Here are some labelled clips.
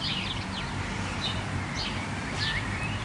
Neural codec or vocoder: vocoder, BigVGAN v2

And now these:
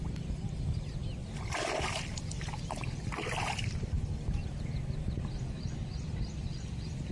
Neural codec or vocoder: none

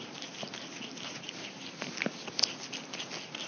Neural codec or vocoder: none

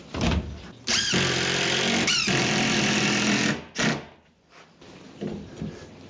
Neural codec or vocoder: vocoder, BigVGAN v2